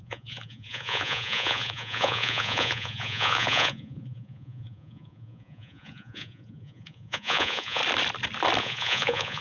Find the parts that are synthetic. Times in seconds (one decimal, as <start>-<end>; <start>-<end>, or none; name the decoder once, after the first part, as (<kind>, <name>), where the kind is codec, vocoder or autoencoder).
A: 0.0-7.8 (vocoder, Vocos); 8.6-9.4